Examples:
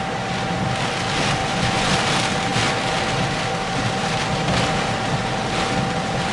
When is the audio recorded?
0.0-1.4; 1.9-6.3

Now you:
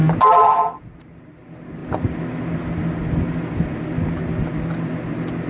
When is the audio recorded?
0.0-5.5

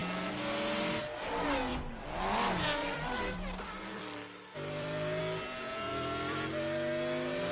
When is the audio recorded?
0.0-1.7; 2.2-2.8; 5.2-5.9; 6.5-7.5

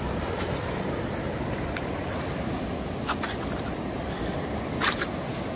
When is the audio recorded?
0.0-0.6; 4.0-5.6

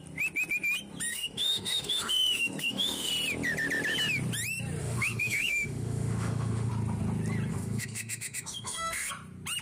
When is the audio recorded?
0.0-1.1; 3.1-4.8; 6.7-7.5; 9.1-9.6